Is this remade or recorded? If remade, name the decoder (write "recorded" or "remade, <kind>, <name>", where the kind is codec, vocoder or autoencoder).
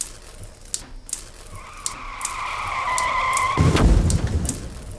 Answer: recorded